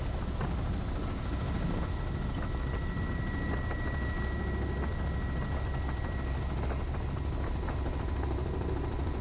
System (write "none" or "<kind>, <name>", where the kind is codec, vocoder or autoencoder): none